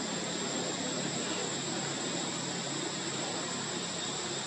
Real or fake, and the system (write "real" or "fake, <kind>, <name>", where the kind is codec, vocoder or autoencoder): real